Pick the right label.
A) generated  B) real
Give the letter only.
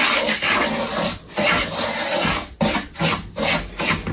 B